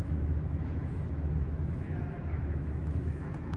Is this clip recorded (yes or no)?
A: no